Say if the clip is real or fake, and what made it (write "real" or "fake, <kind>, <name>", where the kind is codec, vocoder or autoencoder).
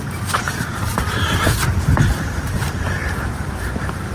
fake, vocoder, BigVGAN v2